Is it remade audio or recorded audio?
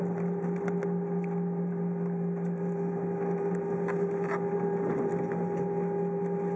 recorded